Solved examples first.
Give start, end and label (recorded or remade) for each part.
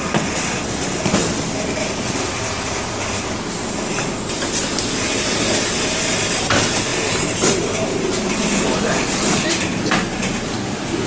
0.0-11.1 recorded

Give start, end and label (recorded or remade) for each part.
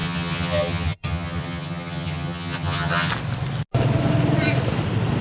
0.0-3.1 remade; 3.1-5.2 recorded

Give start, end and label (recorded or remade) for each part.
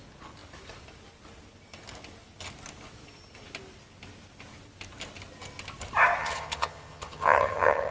0.0-6.2 recorded; 6.2-7.9 remade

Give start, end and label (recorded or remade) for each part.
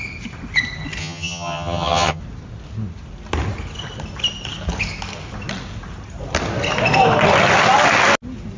0.0-1.0 recorded; 1.0-2.2 remade; 2.2-8.6 recorded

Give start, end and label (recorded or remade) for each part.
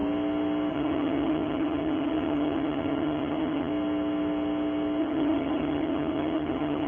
0.0-0.7 recorded; 0.7-3.7 remade; 3.7-5.0 recorded; 5.0-6.9 remade